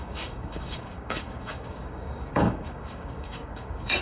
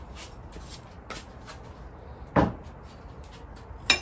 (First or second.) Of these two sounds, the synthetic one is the first